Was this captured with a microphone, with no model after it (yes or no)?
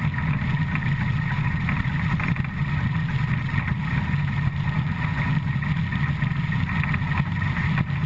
yes